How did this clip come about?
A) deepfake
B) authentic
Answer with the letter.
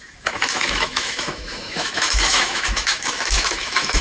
A